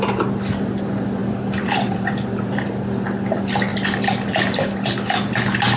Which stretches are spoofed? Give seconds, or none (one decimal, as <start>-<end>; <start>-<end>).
1.2-2.5; 3.7-5.2

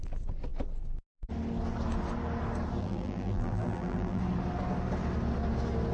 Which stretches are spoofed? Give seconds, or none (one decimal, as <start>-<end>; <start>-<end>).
2.8-4.2

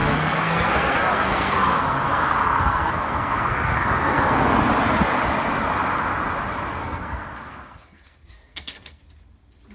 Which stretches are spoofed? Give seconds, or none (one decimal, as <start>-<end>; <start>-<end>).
0.0-4.6; 6.8-9.0

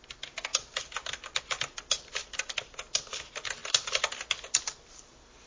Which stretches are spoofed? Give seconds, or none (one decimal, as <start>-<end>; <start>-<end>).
0.0-0.5; 1.4-3.6; 4.1-5.5

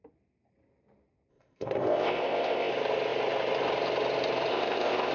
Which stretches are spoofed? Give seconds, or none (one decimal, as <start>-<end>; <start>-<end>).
1.3-2.7; 4.5-5.1